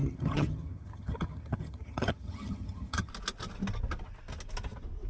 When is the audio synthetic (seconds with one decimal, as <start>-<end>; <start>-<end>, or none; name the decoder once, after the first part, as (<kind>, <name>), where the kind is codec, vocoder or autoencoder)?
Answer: 0.0-3.1 (vocoder, HiFi-GAN)